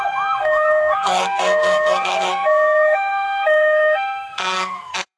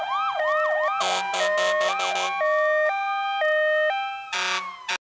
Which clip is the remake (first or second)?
first